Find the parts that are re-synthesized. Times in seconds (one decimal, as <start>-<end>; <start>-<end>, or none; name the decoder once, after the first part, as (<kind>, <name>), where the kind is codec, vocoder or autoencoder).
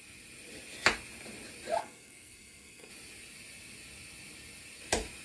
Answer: 1.8-2.9 (codec, SNAC)